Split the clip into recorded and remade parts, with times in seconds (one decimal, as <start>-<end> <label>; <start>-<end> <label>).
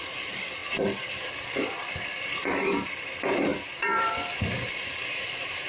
0.0-0.6 remade; 0.6-1.4 recorded; 1.4-5.7 remade